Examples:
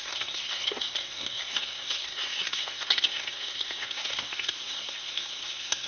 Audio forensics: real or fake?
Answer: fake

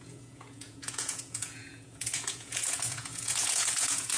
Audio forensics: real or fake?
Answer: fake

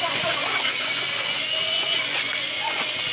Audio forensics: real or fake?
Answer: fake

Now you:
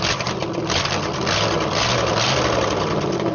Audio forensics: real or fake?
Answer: real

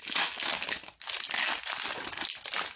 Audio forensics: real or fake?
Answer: real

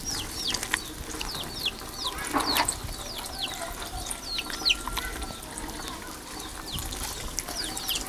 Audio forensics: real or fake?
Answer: real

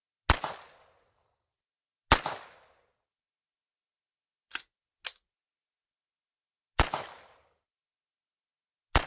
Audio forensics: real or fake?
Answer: real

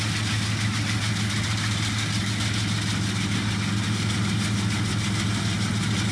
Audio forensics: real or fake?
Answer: real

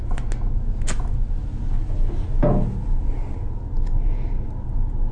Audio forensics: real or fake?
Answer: real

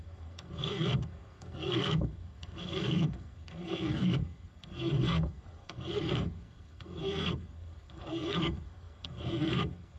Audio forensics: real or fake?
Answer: fake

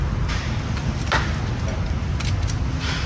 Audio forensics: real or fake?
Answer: real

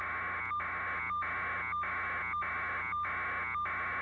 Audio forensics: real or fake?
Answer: real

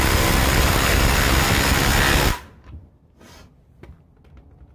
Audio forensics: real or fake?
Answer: real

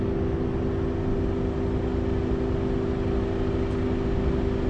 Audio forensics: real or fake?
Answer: real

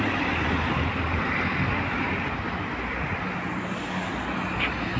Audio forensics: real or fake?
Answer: real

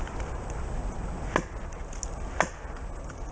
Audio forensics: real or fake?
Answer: real